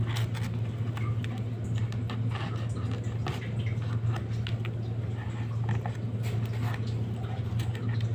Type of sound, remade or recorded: recorded